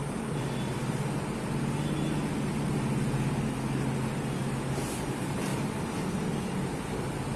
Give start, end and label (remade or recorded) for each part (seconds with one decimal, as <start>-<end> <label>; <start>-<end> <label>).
0.0-1.0 remade; 1.0-5.5 recorded; 5.5-7.0 remade; 7.0-7.4 recorded